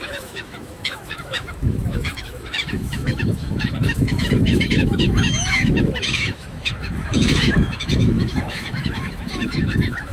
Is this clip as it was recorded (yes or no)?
no